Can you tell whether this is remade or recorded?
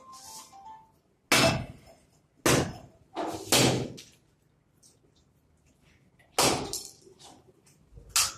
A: recorded